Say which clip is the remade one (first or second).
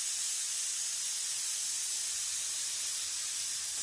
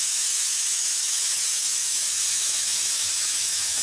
second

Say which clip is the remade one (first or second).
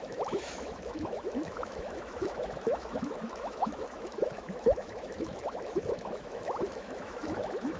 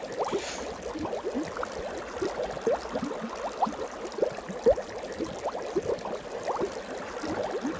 first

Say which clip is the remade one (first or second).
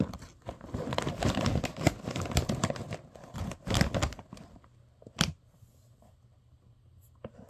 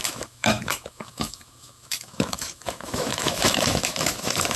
second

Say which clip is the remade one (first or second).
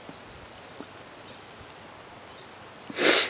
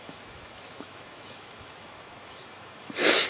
second